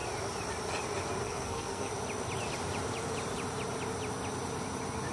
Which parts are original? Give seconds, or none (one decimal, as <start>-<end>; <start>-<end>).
0.0-1.2; 1.9-5.1